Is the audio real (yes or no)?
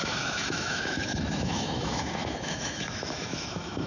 no